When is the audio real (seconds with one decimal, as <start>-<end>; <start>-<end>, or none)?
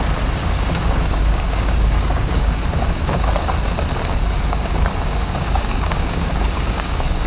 0.0-0.4; 3.3-4.2